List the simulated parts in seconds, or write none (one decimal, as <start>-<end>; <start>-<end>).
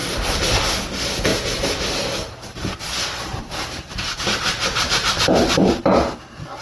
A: 0.0-0.6; 1.3-2.8; 3.3-5.7